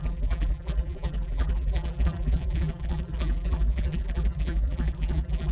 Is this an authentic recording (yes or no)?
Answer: no